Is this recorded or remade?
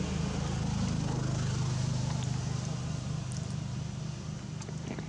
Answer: recorded